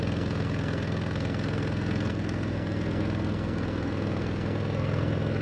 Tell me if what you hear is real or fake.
fake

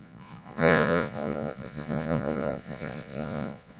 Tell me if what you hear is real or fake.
fake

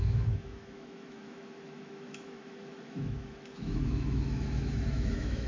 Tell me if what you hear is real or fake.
fake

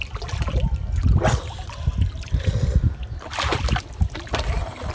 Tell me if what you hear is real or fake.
real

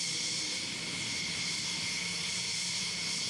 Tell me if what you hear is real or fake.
real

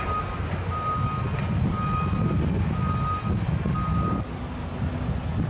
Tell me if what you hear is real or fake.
real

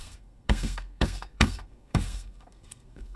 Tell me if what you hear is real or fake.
fake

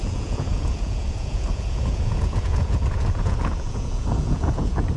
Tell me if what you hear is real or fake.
fake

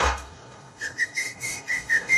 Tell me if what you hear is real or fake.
fake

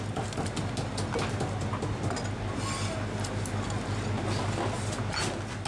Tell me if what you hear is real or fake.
real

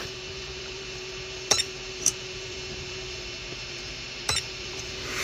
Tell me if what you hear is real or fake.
fake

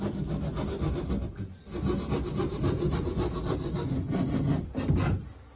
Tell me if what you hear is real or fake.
real